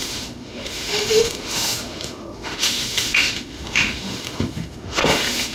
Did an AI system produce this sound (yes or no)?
yes